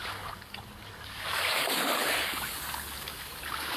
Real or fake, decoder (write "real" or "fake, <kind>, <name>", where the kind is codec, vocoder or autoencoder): fake, codec, DAC